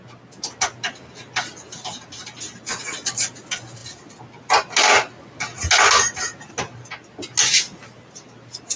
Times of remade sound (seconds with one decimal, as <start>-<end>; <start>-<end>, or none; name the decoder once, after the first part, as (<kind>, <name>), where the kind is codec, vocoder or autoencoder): none